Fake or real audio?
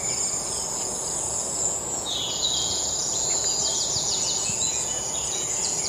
fake